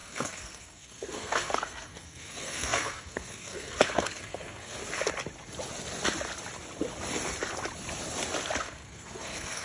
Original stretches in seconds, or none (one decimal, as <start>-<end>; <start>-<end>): 4.8-8.6